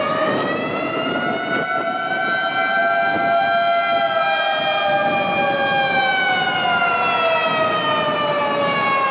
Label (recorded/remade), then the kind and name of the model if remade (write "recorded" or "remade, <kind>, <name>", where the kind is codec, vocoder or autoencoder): recorded